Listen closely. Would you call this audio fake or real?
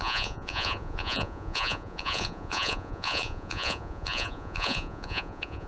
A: fake